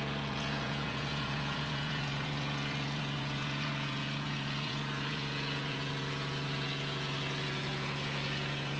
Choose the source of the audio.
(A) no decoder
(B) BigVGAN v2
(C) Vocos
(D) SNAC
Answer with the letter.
C